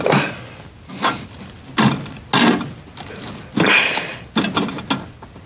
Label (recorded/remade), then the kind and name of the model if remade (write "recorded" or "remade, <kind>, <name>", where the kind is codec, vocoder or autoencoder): recorded